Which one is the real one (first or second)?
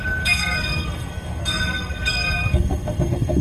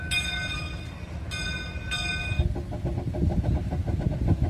second